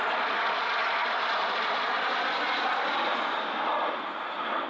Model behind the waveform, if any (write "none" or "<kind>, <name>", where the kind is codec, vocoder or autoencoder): none